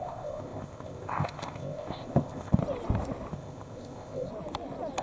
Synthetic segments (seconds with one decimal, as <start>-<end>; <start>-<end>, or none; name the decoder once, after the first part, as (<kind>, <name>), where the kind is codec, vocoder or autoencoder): 0.0-2.6 (codec, ZipCodec); 3.3-4.3